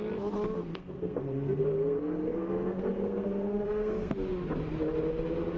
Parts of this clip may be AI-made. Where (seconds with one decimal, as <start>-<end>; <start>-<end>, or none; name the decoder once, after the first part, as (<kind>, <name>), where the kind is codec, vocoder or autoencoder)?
0.7-4.1 (codec, SNAC)